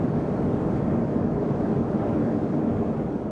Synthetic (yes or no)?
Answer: yes